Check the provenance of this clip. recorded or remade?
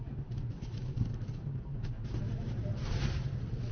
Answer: recorded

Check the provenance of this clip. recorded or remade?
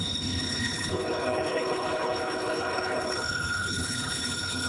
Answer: remade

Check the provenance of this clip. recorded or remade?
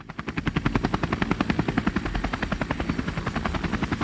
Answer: recorded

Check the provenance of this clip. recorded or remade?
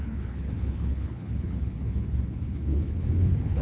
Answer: remade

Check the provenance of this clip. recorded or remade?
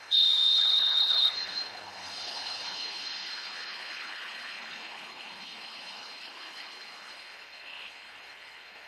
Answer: remade